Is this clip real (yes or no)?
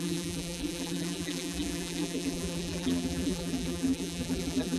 no